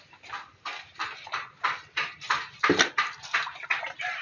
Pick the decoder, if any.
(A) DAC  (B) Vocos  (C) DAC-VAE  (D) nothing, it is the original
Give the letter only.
D